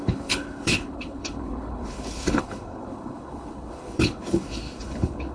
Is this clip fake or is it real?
fake